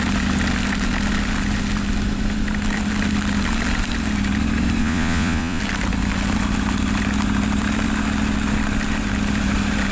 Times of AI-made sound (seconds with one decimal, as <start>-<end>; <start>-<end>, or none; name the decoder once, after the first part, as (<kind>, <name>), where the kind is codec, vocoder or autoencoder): 4.8-5.6 (vocoder, Vocos)